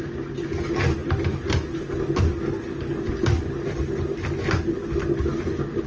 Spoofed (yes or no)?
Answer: no